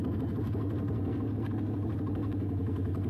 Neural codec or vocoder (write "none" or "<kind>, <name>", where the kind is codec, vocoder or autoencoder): codec, SNAC